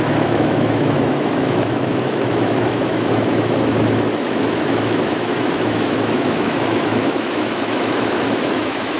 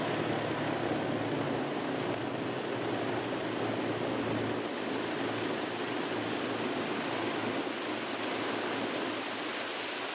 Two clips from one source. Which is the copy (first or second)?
first